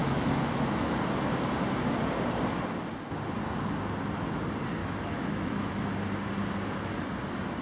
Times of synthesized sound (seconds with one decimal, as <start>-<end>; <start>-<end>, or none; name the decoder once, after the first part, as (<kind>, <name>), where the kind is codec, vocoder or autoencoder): 0.0-0.9 (autoencoder, DAC-VAE); 4.8-5.9